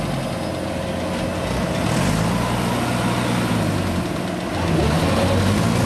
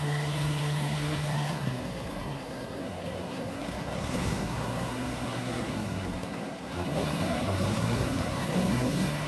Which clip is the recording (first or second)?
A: first